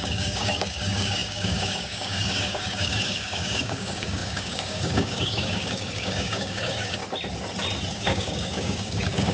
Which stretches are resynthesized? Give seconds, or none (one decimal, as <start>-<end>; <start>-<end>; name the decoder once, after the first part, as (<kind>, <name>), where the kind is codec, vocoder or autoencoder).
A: 0.0-7.0 (codec, DAC); 7.9-9.3

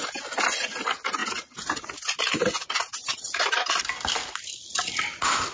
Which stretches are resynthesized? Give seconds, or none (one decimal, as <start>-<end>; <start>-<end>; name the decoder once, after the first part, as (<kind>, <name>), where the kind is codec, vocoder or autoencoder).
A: none

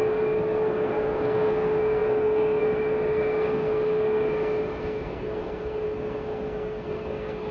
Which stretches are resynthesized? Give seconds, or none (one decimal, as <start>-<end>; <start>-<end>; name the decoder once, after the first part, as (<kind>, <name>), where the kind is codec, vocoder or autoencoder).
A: 0.0-7.5 (codec, SNAC)